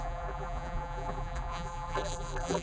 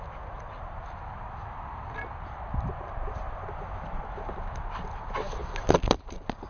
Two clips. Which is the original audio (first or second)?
second